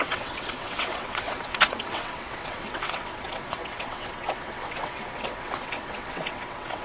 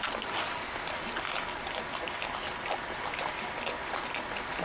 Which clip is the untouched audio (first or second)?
second